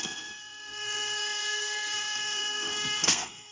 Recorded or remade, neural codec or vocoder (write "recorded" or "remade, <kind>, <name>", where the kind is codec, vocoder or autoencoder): remade, codec, SNAC